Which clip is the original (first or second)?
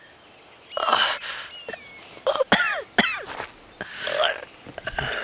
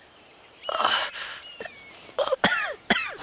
first